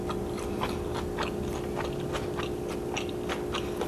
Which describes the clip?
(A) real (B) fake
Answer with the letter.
A